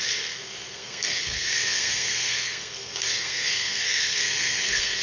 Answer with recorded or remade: remade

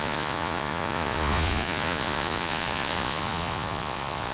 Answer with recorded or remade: remade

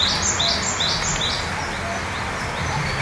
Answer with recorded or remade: recorded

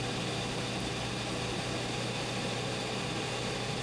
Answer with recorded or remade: recorded